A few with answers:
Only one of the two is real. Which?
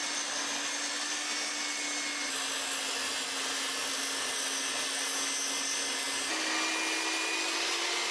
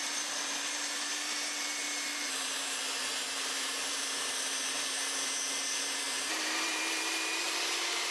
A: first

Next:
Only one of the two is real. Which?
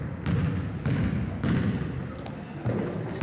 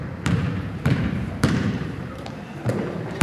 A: first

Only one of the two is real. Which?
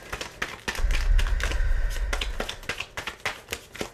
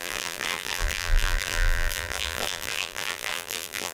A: first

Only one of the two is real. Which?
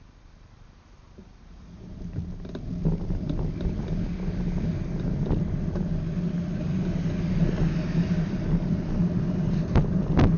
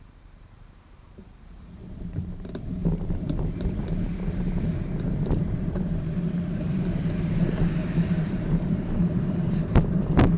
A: first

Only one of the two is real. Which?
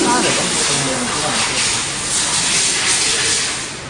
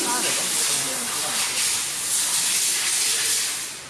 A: first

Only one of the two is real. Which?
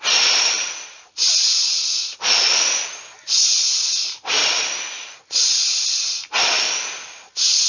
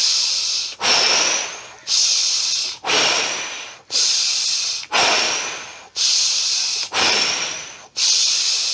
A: first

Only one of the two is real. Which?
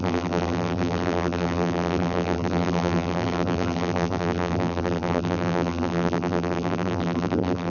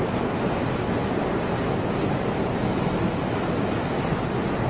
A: second